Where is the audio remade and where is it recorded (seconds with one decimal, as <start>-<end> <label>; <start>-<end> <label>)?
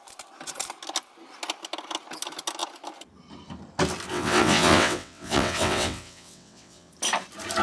0.0-4.1 recorded; 4.1-6.9 remade; 6.9-7.6 recorded